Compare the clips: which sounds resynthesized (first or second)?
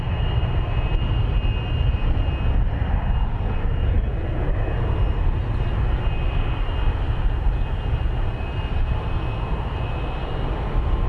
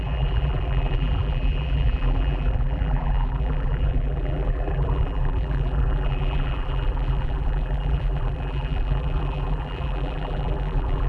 second